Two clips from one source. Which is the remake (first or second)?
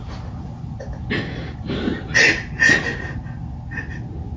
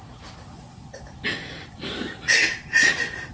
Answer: second